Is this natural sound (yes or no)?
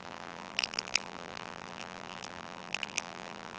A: no